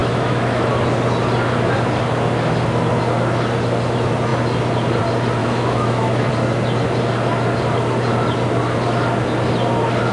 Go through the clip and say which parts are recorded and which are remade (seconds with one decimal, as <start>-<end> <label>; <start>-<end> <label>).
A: 0.0-0.7 remade; 0.7-5.4 recorded; 5.4-6.3 remade; 6.3-10.1 recorded